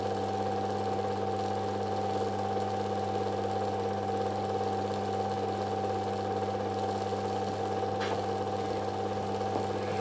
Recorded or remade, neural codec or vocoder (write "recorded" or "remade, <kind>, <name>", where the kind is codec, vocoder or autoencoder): recorded